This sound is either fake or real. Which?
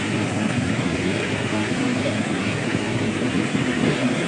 fake